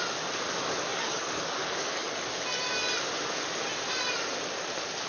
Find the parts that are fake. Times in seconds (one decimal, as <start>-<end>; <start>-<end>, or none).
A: 0.9-2.3